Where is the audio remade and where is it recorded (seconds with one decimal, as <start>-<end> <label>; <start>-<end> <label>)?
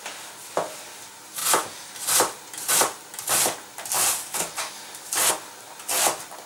0.0-6.5 recorded